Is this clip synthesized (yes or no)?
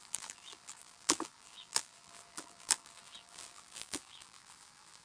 yes